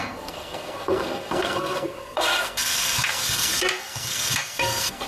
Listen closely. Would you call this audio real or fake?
fake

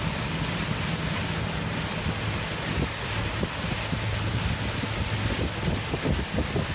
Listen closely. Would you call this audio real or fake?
real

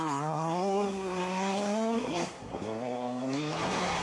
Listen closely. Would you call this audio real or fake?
fake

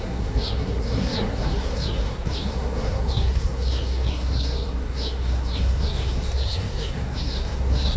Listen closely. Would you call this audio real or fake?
fake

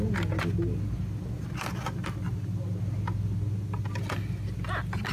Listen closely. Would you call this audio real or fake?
real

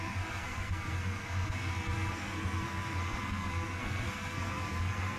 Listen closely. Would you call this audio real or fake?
fake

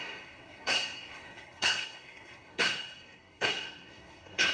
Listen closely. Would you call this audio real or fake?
fake